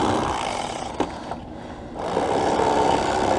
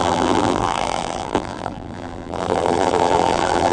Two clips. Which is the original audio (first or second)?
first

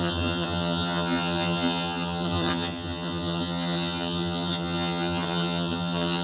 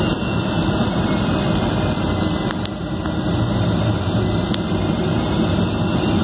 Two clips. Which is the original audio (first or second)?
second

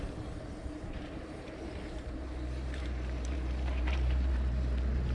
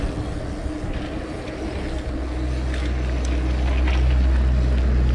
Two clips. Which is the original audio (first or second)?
second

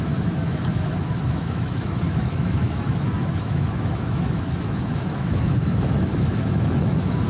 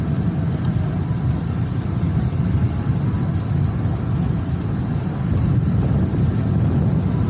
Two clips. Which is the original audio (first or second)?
second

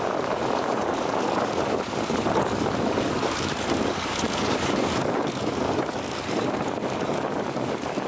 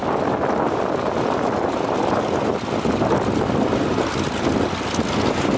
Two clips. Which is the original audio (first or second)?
second